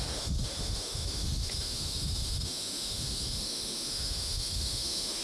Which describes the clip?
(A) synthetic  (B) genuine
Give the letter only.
A